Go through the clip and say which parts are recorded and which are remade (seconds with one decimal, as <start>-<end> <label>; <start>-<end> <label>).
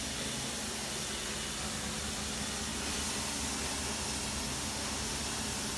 0.0-4.5 recorded; 4.5-5.2 remade; 5.2-5.8 recorded